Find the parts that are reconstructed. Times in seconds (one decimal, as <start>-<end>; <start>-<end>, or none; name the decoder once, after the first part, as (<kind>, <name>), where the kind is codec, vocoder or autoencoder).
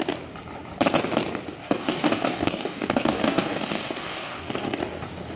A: 1.6-4.8 (codec, DAC)